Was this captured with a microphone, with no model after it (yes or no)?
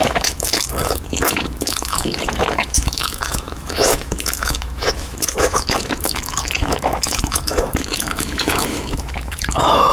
no